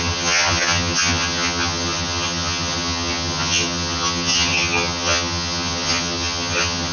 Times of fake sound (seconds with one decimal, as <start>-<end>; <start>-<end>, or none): 0.0-6.9

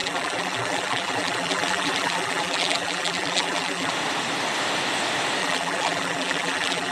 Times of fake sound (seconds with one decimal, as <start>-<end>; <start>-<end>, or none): 0.0-3.9; 5.4-6.9

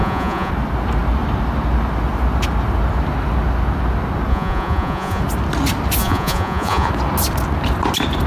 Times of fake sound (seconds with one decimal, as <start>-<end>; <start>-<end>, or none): 0.0-0.5; 4.3-5.2; 6.0-6.9